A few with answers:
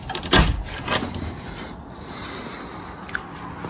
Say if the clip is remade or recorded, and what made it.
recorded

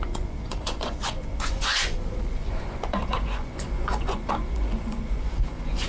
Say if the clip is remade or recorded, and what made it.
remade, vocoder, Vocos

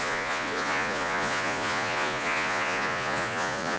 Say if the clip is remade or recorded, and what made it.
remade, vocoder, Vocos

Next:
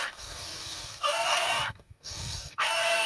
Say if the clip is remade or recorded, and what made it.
remade, codec, DAC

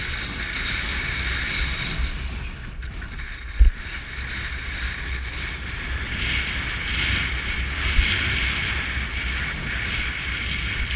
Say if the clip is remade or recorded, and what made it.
recorded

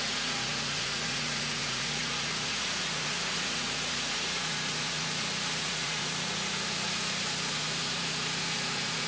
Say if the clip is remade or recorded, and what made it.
remade, vocoder, Vocos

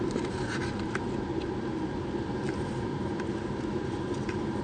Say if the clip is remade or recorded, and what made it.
remade, vocoder, BigVGAN v2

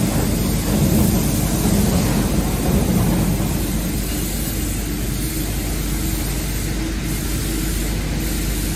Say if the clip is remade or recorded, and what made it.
recorded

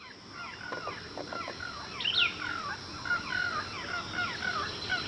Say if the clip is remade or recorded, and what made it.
recorded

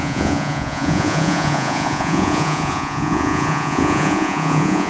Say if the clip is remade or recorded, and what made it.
remade, vocoder, Vocos